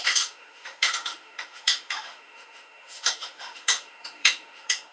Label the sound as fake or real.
fake